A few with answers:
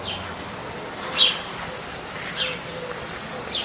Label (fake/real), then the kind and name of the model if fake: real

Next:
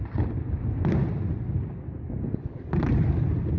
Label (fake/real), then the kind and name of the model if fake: real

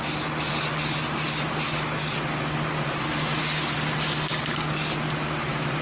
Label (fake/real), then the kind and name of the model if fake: real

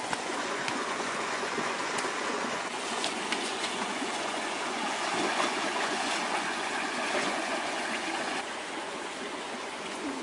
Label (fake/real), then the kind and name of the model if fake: fake, vocoder, Vocos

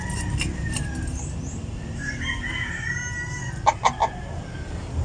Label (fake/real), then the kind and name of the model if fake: real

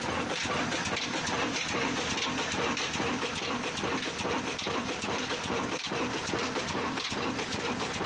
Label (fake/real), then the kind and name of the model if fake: fake, vocoder, BigVGAN v2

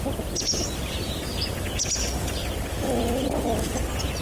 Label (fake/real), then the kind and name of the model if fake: real